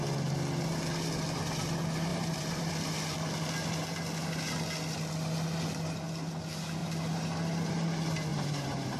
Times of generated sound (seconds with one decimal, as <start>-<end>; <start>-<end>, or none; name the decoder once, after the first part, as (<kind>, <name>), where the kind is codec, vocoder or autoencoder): 2.1-2.7 (vocoder, BigVGAN v2); 8.3-9.0